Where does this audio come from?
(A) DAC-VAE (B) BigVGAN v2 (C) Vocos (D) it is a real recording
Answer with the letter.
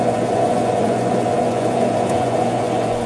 C